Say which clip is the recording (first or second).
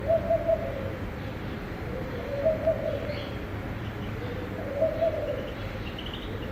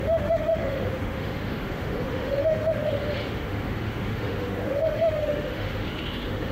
first